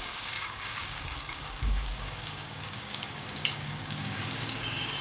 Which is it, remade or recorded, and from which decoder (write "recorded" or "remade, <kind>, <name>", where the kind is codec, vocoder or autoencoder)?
remade, codec, DAC